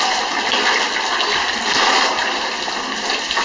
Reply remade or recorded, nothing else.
recorded